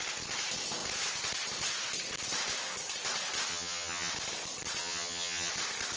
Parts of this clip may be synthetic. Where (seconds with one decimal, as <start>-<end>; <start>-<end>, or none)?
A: 3.5-4.1; 4.8-5.5